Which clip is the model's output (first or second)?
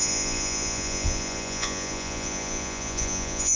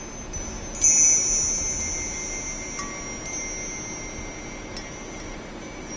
first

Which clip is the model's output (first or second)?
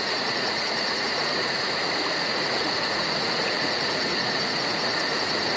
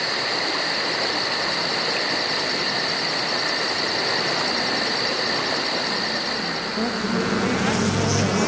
first